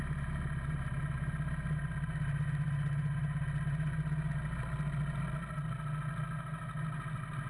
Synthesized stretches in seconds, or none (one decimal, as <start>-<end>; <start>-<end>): none